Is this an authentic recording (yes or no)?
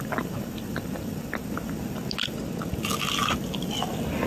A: yes